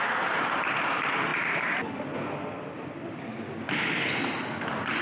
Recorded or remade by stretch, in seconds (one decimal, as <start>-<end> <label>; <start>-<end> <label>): 0.0-1.3 recorded; 1.3-4.1 remade; 4.1-5.0 recorded